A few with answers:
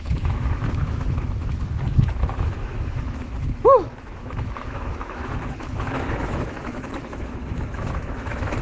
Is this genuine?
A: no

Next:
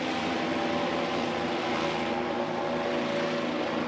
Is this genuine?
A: yes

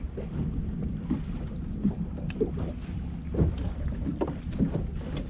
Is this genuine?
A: yes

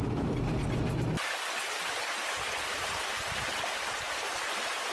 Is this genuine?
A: yes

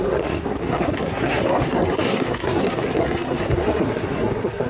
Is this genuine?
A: no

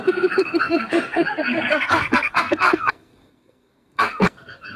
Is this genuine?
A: no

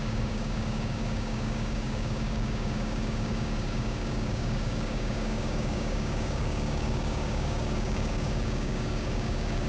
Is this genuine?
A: no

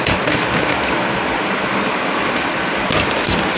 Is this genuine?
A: yes